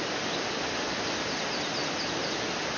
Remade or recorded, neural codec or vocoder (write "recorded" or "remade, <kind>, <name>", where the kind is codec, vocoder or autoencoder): recorded